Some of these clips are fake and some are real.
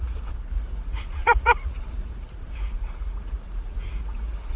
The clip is fake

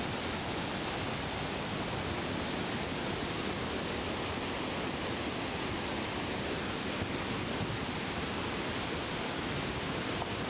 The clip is real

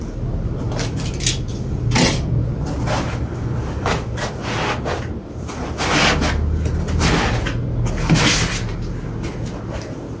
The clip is real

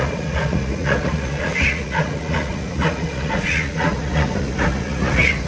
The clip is fake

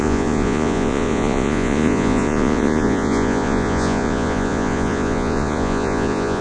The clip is fake